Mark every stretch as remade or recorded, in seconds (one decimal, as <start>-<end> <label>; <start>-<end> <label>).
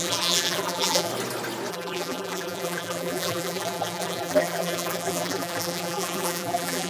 0.0-1.1 remade; 1.1-1.7 recorded; 1.7-6.9 remade